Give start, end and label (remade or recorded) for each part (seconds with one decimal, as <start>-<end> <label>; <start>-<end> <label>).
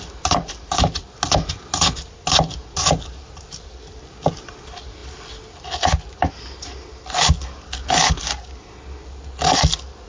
0.0-10.1 recorded